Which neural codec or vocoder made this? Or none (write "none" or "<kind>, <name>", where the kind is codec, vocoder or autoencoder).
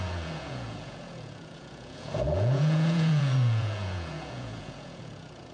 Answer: vocoder, Vocos